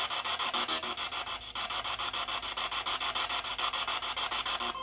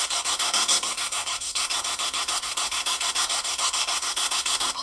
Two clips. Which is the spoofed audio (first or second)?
second